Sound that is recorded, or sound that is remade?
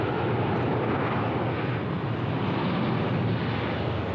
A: recorded